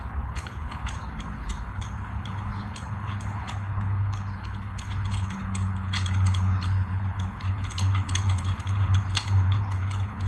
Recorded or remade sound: remade